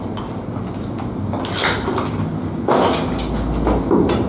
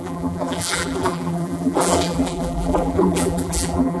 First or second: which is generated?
second